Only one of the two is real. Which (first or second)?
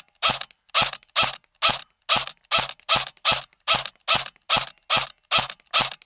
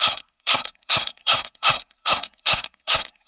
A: first